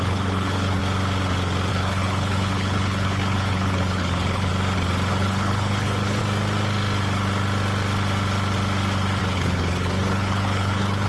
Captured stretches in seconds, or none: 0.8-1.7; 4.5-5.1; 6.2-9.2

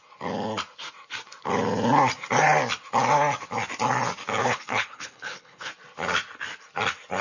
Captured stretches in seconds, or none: 0.0-4.4; 5.7-7.2

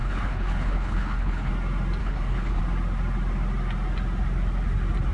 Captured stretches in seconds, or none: 1.5-2.0; 2.6-5.1